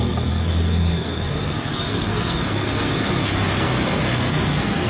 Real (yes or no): no